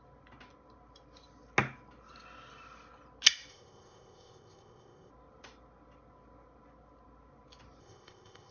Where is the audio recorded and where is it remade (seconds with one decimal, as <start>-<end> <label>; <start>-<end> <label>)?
0.0-3.5 recorded; 3.5-5.1 remade; 5.1-7.8 recorded; 7.8-8.5 remade